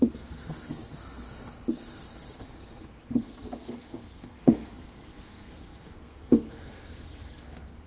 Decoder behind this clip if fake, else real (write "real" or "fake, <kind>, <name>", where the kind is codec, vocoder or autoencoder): fake, codec, SNAC